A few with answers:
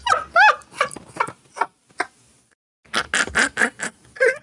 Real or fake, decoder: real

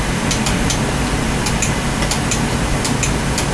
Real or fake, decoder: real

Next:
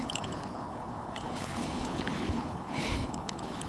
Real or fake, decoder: fake, codec, HILCodec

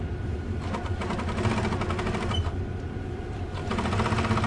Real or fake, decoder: real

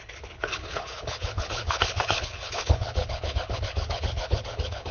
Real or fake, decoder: fake, codec, HILCodec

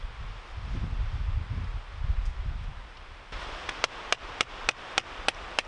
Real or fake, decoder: real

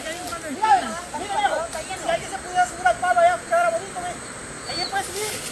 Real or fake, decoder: real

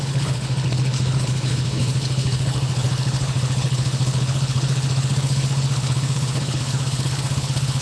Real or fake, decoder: fake, codec, HILCodec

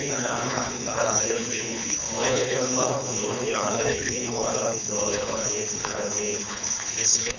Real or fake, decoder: fake, codec, HILCodec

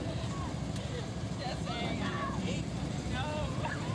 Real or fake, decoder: real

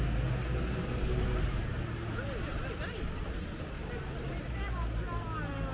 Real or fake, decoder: real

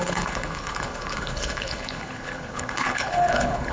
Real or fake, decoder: fake, codec, HILCodec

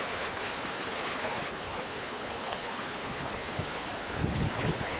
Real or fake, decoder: fake, codec, HILCodec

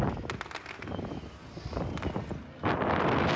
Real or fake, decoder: real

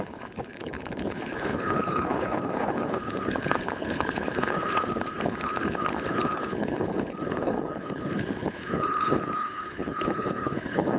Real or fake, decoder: fake, codec, HILCodec